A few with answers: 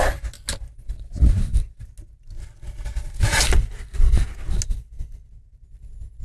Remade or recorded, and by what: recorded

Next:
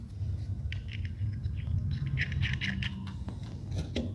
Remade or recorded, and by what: recorded